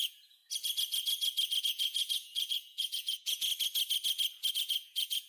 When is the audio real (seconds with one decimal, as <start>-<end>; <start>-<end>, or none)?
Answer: 0.4-1.6; 3.5-4.5